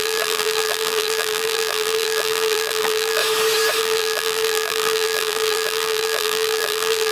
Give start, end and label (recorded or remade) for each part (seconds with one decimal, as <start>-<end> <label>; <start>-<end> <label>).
0.0-3.2 remade; 3.2-3.8 recorded; 3.8-7.1 remade